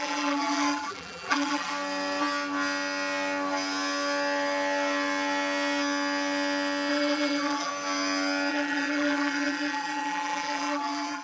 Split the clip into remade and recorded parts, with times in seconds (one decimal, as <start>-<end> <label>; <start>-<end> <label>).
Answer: 0.0-1.7 remade; 1.7-6.9 recorded; 6.9-7.7 remade; 7.7-8.5 recorded; 8.5-11.2 remade